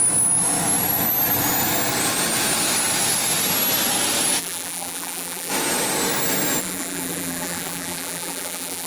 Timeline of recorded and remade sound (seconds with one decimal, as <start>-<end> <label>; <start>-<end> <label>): 0.0-4.4 recorded; 4.4-5.5 remade; 5.5-6.6 recorded; 6.6-8.9 remade